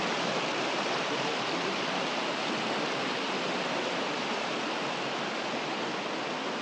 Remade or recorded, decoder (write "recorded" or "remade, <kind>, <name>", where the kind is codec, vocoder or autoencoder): recorded